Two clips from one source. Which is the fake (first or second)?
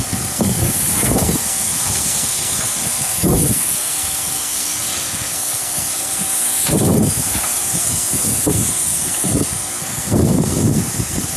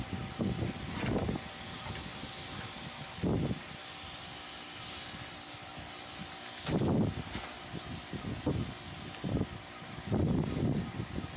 first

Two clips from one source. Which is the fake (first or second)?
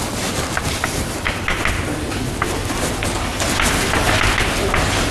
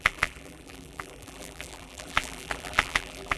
second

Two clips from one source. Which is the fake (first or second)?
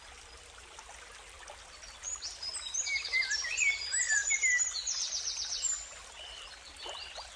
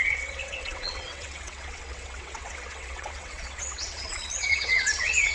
second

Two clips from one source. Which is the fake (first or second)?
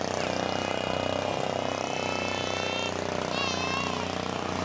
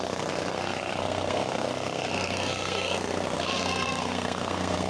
second